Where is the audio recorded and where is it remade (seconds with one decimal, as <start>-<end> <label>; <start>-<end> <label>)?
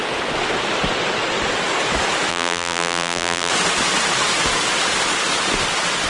0.0-2.3 recorded; 2.3-3.5 remade; 3.5-6.1 recorded